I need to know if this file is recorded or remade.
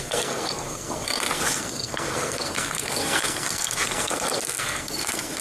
remade